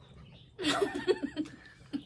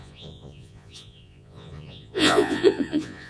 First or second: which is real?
first